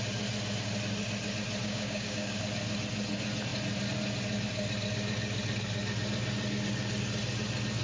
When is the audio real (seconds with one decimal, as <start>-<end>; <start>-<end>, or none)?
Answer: 0.0-1.6; 2.4-7.8